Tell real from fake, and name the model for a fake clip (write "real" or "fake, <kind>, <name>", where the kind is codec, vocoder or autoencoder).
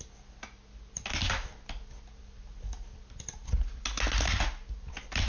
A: real